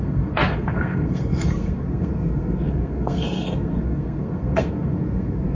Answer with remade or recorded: remade